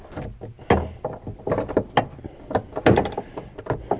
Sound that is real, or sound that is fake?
real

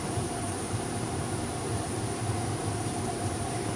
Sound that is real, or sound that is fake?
fake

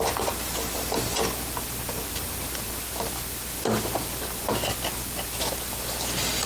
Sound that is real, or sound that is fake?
fake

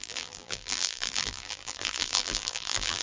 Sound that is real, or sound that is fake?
fake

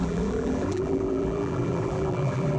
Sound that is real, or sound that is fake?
fake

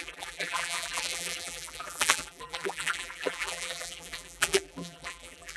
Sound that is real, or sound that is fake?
fake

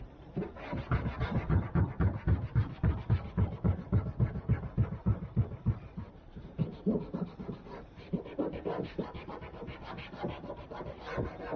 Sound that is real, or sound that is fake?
fake